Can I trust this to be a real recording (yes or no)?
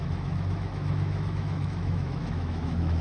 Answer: no